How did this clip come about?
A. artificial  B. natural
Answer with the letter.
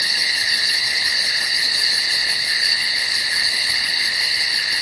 A